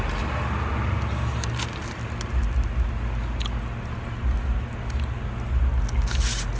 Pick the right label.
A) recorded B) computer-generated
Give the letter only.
A